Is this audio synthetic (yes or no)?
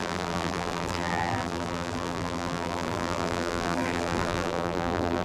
yes